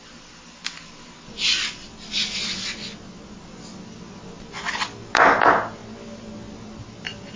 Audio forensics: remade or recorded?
recorded